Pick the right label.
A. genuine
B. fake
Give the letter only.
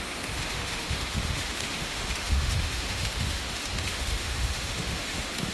B